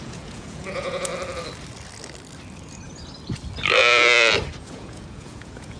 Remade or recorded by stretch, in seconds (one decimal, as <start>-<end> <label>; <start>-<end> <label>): 0.0-1.1 remade; 1.1-4.6 recorded; 4.6-5.8 remade